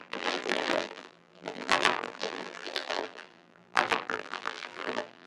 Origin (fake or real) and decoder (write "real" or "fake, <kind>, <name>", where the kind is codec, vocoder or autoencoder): fake, vocoder, BigVGAN v2